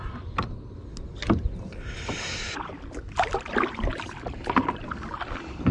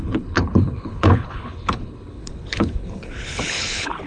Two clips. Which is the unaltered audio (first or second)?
first